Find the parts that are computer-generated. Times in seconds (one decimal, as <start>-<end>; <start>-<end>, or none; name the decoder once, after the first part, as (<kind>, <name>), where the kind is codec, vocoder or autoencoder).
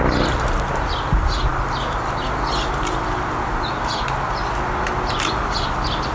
none